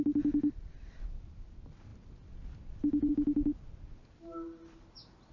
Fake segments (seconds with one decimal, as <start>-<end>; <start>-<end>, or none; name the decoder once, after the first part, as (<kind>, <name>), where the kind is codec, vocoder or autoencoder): none